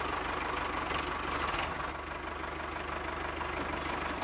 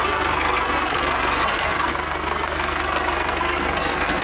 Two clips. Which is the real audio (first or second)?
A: first